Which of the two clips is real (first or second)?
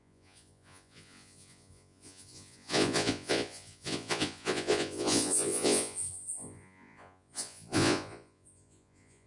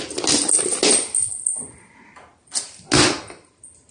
second